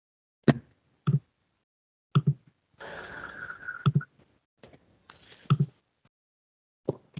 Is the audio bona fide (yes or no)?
yes